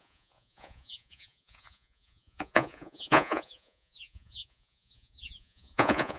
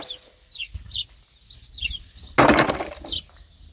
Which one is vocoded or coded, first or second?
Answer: first